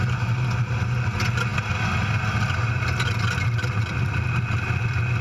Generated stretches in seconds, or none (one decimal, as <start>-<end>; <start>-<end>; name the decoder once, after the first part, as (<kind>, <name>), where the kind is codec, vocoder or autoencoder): none